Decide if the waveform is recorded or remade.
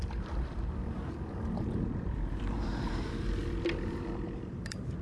remade